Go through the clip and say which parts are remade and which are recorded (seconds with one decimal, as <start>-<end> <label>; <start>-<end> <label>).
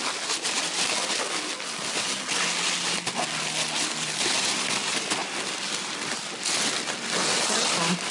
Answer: 0.0-8.1 recorded